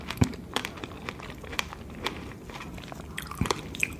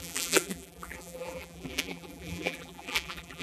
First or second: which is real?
first